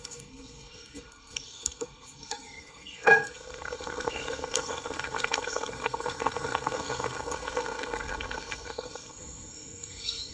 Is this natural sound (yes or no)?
no